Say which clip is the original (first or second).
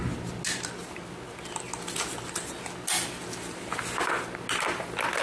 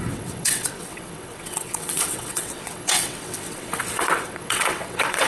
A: first